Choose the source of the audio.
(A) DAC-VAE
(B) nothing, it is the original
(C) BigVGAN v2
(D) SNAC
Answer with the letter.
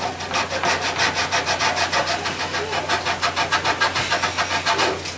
B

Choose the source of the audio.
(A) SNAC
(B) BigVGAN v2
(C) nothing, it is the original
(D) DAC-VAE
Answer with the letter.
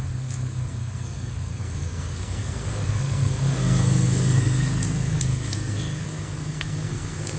A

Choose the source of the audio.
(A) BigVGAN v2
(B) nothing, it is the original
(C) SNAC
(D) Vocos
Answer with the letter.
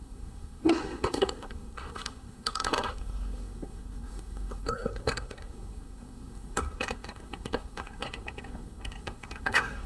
C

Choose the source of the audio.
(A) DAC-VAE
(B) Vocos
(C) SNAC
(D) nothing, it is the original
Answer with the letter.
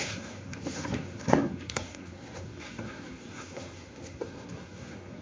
C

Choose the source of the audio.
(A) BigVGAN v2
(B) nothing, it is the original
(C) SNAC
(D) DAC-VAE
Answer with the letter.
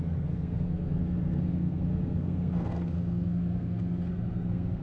C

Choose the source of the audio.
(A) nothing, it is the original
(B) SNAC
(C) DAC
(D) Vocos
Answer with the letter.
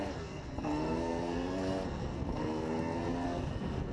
B